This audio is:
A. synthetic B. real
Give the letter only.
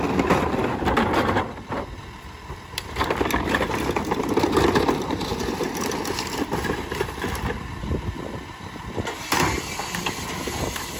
A